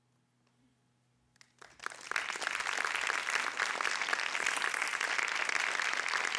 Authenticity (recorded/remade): recorded